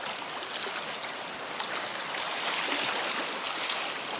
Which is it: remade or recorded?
recorded